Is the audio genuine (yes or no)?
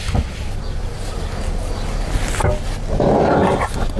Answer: yes